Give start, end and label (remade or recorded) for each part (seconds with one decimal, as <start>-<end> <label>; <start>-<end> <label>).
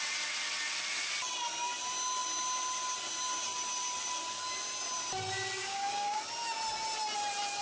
0.0-5.6 recorded; 5.6-6.2 remade; 6.2-7.6 recorded